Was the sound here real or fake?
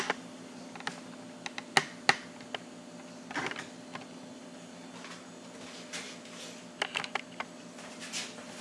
real